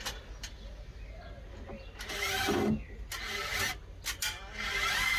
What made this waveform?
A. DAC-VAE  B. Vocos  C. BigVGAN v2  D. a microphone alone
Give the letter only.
D